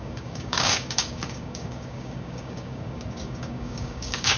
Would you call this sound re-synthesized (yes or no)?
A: yes